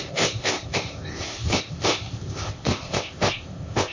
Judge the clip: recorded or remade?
remade